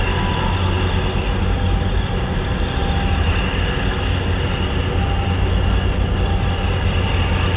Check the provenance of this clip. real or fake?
real